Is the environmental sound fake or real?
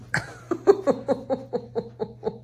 real